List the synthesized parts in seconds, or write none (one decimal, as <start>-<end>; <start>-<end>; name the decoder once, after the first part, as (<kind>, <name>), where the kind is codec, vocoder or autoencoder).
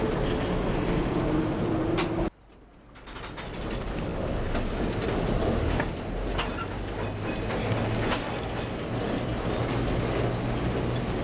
none